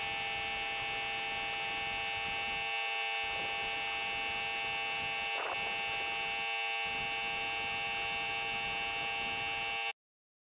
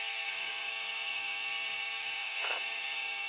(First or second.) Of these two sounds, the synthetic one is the second